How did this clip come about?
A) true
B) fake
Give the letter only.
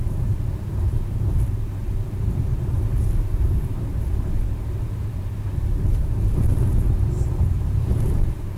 B